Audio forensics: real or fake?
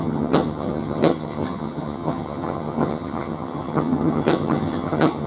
fake